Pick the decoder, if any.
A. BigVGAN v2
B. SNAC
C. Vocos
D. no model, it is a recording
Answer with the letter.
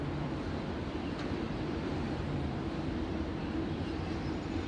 A